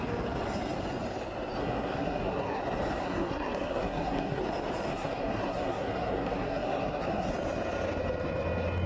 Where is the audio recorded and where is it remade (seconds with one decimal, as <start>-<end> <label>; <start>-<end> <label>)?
0.0-1.6 recorded; 1.6-2.6 remade; 2.6-3.0 recorded; 3.0-4.4 remade; 4.4-4.9 recorded; 4.9-7.3 remade; 7.3-8.9 recorded